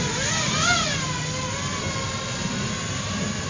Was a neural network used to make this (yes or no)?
no